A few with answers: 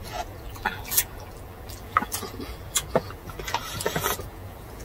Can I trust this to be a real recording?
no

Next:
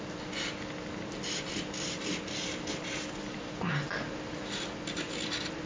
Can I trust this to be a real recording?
yes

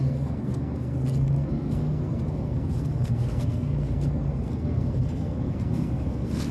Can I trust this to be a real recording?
no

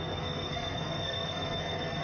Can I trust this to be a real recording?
no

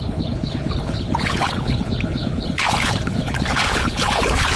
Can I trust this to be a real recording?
no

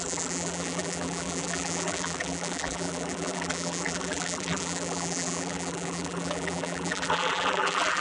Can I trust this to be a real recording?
no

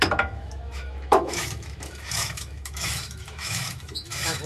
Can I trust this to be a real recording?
no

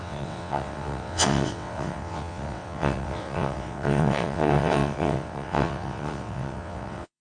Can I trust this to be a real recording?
no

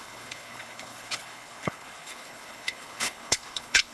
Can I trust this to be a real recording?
no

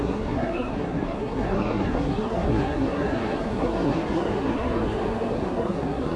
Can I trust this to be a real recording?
no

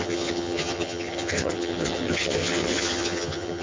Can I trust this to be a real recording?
no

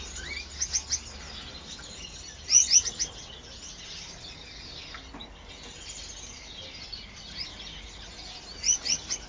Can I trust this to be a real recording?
yes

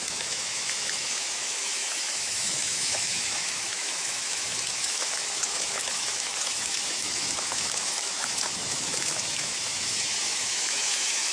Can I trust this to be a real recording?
no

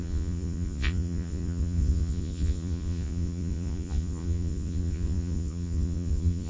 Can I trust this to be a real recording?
no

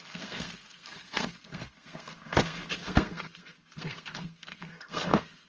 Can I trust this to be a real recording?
no